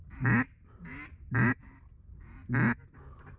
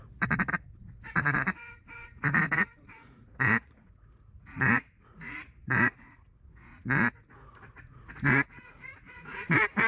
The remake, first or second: second